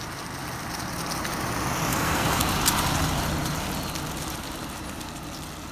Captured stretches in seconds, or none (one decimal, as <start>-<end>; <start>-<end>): 0.0-1.9; 2.4-5.7